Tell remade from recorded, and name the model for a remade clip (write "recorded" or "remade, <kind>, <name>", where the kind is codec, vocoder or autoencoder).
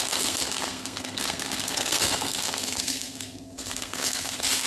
remade, codec, SNAC